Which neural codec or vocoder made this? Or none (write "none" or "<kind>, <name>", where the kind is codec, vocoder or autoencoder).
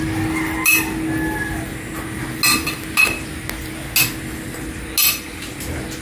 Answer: none